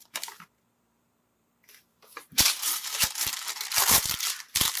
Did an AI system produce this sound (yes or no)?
yes